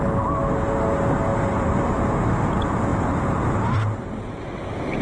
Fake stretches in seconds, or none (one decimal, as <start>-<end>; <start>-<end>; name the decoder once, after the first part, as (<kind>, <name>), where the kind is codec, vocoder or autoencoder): 1.3-2.1 (vocoder, BigVGAN v2); 2.9-4.6